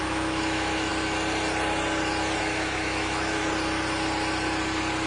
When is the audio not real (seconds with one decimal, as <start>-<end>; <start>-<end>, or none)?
0.0-0.9; 2.4-3.4